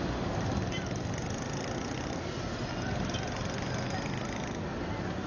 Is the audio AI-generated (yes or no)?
no